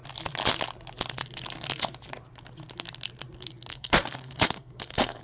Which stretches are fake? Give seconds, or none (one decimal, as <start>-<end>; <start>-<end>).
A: 3.7-5.2